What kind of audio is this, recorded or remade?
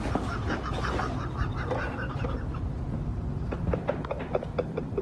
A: recorded